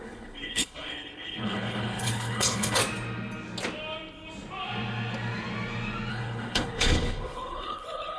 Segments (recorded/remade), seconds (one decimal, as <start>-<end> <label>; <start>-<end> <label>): 0.0-2.8 remade; 2.8-6.1 recorded; 6.1-8.2 remade